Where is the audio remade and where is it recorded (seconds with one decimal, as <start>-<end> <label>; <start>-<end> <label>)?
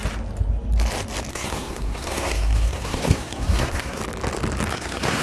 0.0-1.3 recorded; 1.3-4.0 remade; 4.0-4.7 recorded; 4.7-5.2 remade